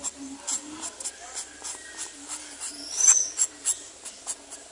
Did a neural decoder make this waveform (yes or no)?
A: no